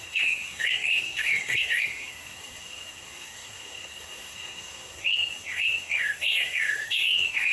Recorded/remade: remade